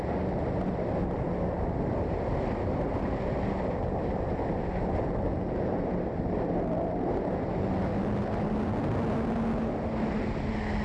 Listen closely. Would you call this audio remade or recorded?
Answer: recorded